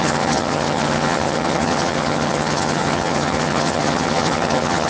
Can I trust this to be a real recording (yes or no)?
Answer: no